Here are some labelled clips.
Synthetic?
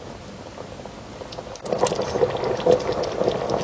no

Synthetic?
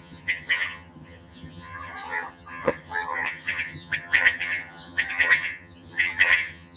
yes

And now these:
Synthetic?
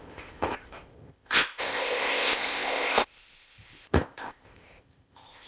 yes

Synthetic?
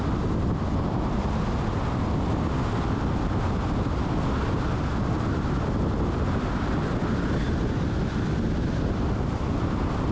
no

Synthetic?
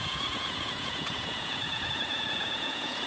yes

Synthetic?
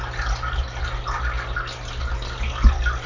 no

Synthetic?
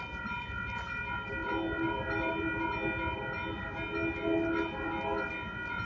no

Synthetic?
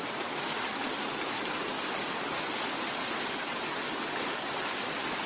no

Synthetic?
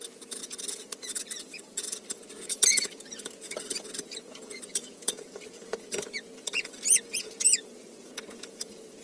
yes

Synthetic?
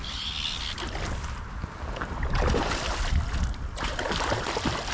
no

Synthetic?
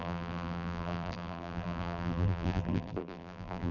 yes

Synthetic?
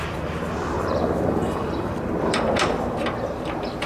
yes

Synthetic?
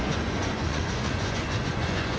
yes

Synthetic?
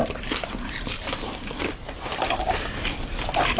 yes